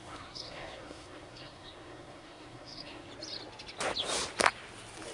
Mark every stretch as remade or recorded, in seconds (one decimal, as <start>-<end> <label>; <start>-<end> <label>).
0.0-3.1 remade; 3.1-5.1 recorded